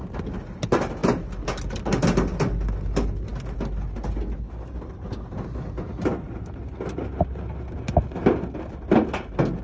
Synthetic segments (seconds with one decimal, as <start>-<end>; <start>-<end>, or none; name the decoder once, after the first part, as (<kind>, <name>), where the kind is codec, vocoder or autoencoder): none